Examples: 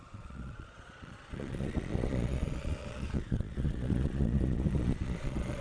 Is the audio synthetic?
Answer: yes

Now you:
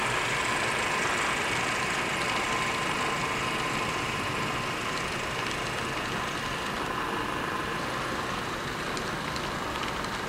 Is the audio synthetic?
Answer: no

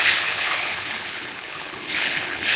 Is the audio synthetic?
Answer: yes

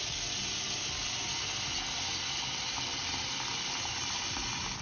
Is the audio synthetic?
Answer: no